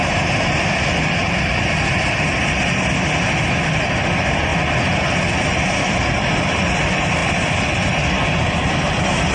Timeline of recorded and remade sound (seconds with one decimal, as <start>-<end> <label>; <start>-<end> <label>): 0.0-9.3 recorded